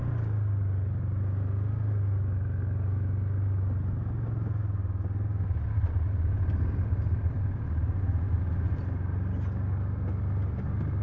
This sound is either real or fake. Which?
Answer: real